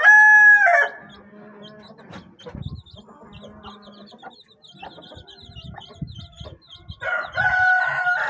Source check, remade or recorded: recorded